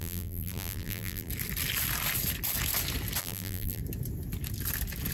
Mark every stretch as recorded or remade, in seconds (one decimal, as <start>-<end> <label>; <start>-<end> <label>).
0.0-1.3 remade; 1.3-3.2 recorded; 3.2-3.8 remade; 3.8-5.1 recorded